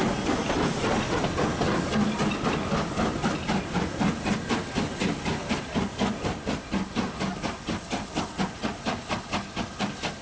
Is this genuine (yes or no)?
yes